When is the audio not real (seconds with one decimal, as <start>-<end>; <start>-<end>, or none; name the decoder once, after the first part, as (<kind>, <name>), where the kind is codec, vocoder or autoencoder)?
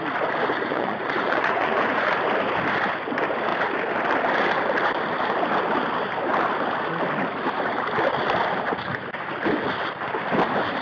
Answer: 0.5-2.1 (vocoder, Vocos)